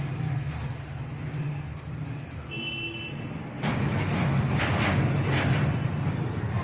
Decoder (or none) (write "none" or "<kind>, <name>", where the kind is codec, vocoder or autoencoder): none